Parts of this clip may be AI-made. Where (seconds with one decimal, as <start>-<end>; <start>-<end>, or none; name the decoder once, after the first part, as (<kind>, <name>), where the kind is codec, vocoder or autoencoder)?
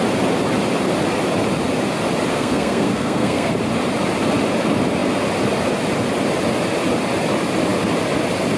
2.3-3.5 (codec, SNAC)